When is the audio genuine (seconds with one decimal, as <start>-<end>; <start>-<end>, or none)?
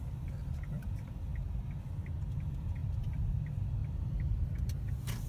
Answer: 0.0-5.3